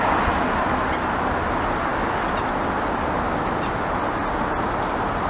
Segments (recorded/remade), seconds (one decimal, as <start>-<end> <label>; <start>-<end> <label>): 0.0-5.3 recorded